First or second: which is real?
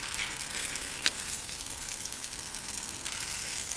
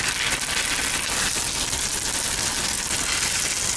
second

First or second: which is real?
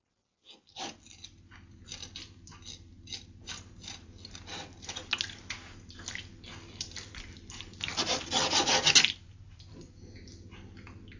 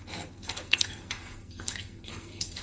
first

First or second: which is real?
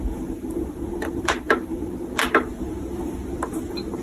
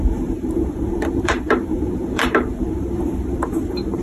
first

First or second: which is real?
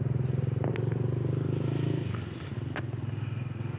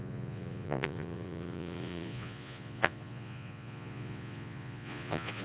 first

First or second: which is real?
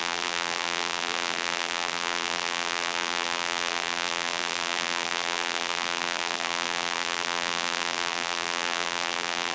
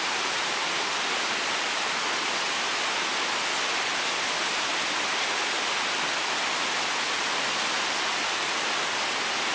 second